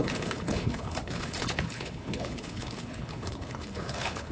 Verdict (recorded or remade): remade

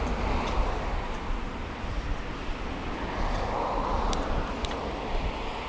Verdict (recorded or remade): recorded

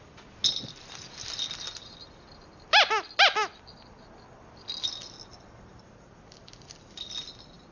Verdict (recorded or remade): recorded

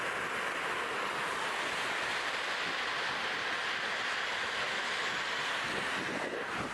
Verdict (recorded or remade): recorded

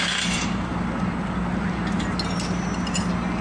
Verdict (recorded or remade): recorded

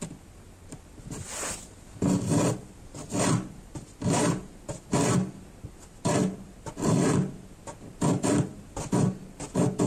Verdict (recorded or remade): recorded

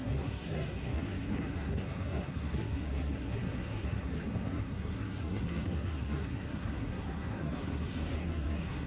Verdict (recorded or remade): remade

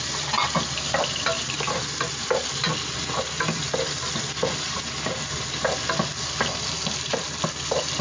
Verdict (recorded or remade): recorded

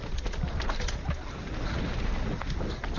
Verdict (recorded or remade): recorded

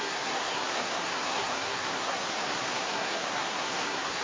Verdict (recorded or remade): remade